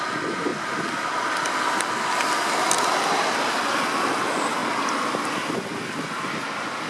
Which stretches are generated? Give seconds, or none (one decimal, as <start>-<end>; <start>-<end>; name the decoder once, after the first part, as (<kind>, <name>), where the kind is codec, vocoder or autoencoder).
none

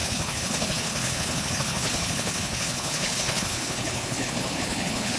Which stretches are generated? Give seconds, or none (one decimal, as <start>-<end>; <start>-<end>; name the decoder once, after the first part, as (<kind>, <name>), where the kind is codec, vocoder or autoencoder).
0.0-5.2 (codec, HILCodec)

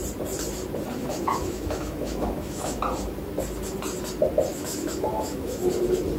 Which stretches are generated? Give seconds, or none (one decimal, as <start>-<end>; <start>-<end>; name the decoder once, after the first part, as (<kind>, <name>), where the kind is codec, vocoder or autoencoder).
1.0-2.8 (autoencoder, DAC-VAE); 4.5-5.6